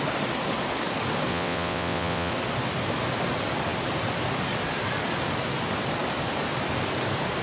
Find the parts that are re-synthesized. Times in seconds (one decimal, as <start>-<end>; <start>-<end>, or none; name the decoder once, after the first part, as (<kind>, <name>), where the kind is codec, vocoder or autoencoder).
1.3-2.3 (vocoder, WaveNeXt)